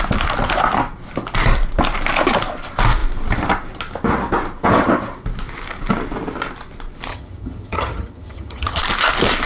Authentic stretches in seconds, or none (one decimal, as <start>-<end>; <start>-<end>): 0.0-7.1; 8.8-9.5